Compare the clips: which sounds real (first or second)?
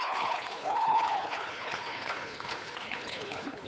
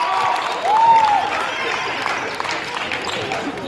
second